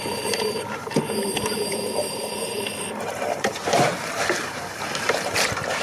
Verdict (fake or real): fake